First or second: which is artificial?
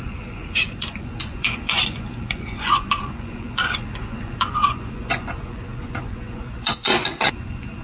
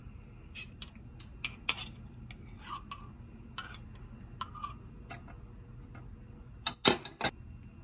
first